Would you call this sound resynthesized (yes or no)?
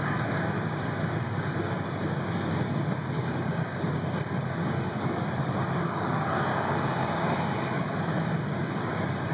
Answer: yes